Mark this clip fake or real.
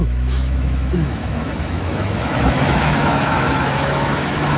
fake